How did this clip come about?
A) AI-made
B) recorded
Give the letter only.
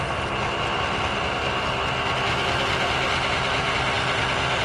B